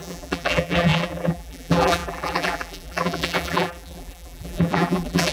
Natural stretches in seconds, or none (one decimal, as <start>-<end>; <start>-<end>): none

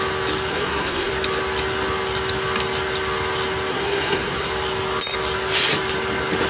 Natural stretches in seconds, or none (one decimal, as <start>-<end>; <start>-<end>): 0.0-0.5; 1.1-3.7; 4.5-6.5

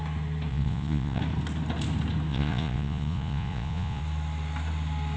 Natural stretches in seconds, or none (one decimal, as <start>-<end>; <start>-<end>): 0.0-0.5; 1.2-2.3; 4.0-5.2

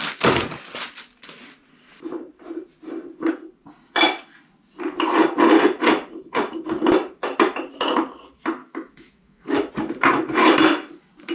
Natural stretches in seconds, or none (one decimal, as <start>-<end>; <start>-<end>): 0.0-8.6; 9.7-11.3

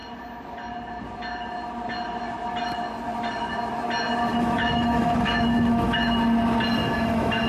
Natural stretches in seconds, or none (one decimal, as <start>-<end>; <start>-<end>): 0.0-4.3; 6.2-6.8

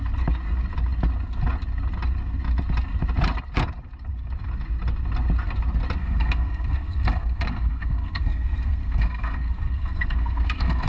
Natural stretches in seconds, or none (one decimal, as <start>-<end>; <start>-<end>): 0.0-6.0

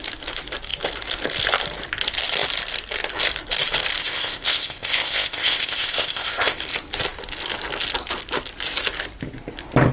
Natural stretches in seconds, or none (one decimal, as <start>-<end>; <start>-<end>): 0.0-4.0; 6.6-9.9